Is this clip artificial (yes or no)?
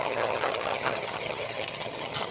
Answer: yes